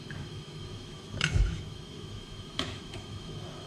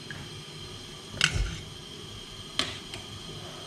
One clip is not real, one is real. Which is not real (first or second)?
first